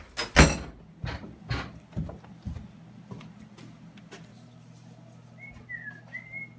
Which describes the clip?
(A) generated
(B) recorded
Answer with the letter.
B